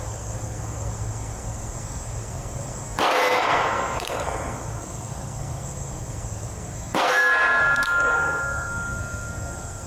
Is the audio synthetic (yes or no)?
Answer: yes